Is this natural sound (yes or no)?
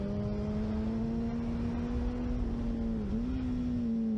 yes